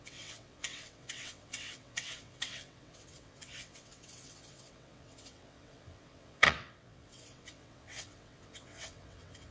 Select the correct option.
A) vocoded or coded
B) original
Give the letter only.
A